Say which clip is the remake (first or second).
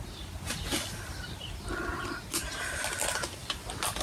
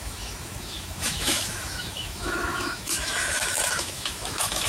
second